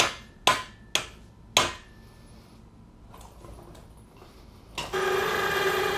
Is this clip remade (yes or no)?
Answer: no